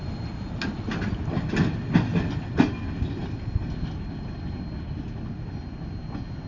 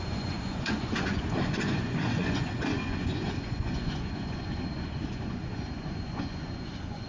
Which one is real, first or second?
first